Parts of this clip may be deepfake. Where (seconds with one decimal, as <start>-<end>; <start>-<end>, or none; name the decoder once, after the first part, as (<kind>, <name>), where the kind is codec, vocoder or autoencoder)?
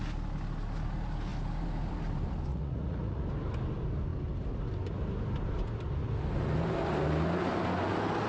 2.5-3.2 (vocoder, Vocos)